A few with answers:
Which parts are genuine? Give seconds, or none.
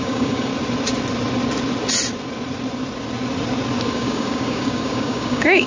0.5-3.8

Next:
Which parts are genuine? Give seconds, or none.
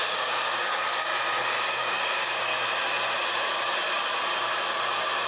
1.1-1.6; 2.5-5.3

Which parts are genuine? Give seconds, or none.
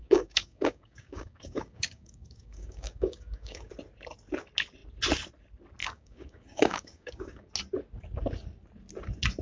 3.7-5.8; 7.5-9.4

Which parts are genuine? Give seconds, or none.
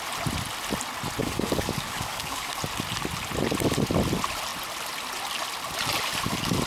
0.0-1.2; 2.5-6.7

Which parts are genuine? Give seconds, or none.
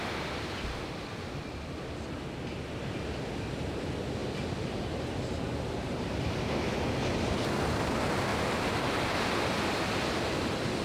0.0-10.8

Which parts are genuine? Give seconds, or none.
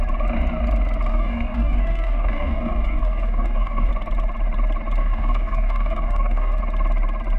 0.0-1.1; 3.9-5.0; 6.6-7.4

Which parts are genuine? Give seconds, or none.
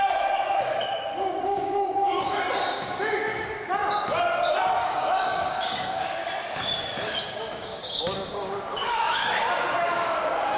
3.8-4.8; 9.2-9.7